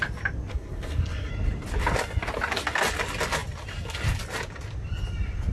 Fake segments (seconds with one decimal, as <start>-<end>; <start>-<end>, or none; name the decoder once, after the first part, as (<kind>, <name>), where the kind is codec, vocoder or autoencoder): 0.5-1.3 (codec, SNAC)